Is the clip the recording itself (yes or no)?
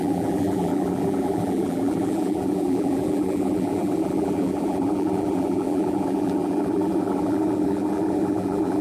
no